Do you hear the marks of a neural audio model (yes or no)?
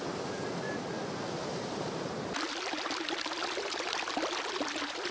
no